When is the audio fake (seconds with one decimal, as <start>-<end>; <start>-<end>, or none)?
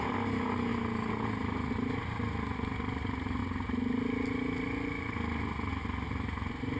none